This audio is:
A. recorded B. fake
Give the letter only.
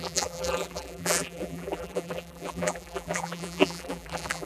B